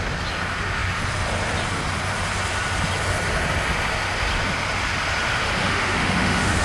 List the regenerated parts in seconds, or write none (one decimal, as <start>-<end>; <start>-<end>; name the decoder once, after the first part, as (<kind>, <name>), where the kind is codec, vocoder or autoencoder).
5.6-6.6 (autoencoder, DAC-VAE)